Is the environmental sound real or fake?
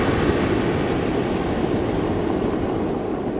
real